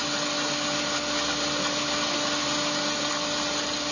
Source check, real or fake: real